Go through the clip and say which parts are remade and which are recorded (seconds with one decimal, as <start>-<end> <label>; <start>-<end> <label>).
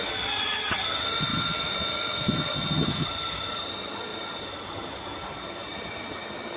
0.0-6.6 remade